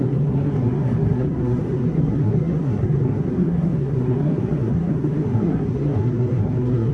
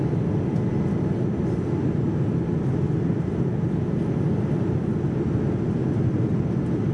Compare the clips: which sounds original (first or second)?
second